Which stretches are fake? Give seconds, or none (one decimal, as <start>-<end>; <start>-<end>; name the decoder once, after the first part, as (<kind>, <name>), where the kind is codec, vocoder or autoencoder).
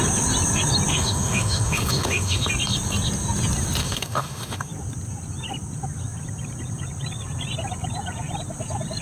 0.9-2.5 (autoencoder, DAC-VAE); 3.8-4.7